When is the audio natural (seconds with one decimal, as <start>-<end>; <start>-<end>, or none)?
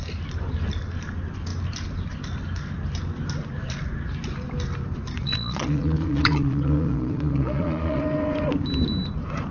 0.0-5.2; 8.0-9.5